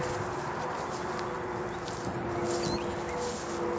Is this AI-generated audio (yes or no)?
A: no